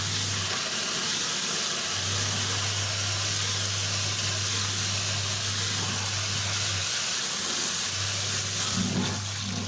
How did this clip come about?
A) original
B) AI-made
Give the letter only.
A